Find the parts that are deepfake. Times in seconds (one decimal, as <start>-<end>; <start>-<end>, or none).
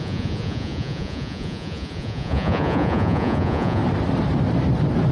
0.0-3.8